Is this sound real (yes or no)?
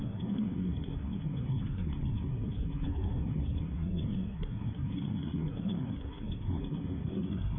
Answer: no